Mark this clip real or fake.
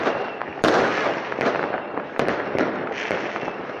real